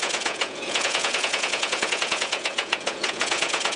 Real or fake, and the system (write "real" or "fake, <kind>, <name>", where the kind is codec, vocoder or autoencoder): fake, vocoder, Vocos